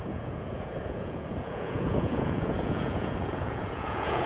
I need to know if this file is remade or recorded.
remade